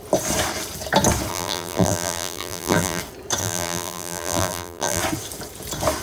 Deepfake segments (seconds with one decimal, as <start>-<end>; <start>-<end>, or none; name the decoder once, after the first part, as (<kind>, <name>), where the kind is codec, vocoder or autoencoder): 1.3-3.0 (vocoder, BigVGAN v2); 3.4-5.0